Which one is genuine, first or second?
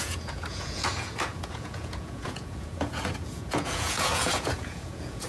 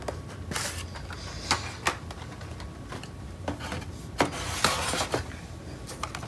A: second